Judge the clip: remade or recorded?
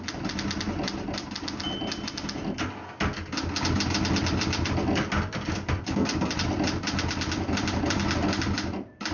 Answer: recorded